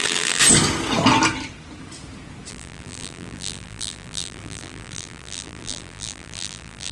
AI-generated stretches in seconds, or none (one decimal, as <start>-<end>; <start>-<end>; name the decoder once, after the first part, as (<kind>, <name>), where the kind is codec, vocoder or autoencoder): 0.0-0.4 (vocoder, BigVGAN v2); 2.5-6.9